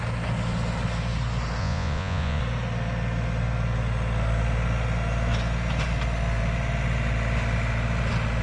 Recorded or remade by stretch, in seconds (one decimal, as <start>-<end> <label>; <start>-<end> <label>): 0.0-1.6 recorded; 1.6-2.4 remade; 2.4-8.4 recorded